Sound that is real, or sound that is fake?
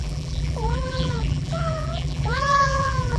fake